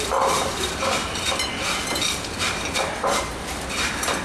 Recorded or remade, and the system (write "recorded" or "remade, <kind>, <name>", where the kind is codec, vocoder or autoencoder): remade, vocoder, BigVGAN v2